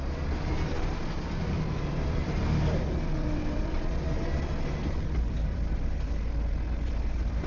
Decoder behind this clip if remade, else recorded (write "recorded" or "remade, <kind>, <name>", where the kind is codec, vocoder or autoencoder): remade, vocoder, BigVGAN v2